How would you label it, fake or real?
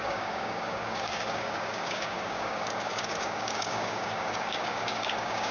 fake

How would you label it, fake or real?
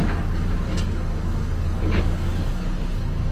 fake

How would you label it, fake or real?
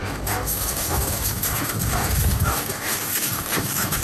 fake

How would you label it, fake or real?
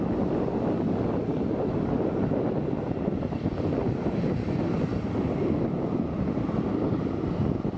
real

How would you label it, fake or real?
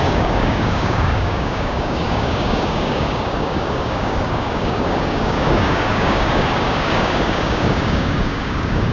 fake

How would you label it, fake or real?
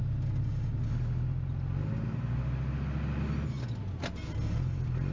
real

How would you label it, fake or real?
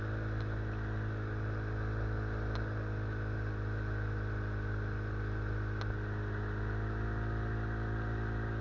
real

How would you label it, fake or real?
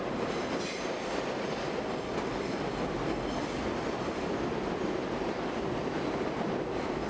real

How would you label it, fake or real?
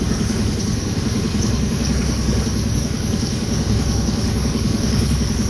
fake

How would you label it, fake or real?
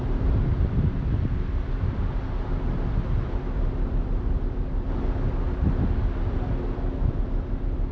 real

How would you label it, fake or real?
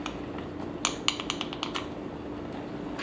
real